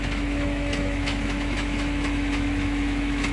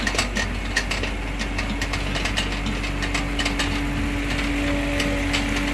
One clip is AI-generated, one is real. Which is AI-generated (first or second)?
first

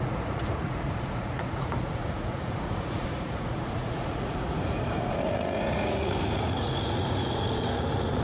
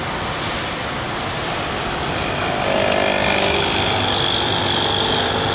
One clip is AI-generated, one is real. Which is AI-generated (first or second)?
first